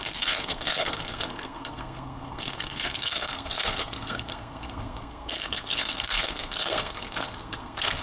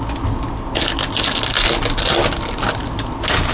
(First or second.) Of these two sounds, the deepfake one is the first